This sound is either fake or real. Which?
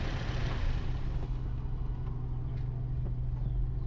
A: real